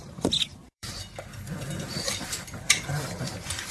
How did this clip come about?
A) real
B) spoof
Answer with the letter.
B